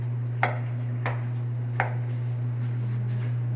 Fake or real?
real